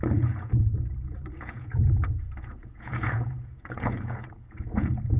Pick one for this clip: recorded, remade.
remade